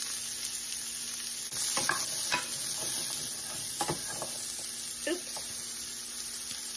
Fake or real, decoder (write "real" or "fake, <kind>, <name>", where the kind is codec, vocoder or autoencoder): real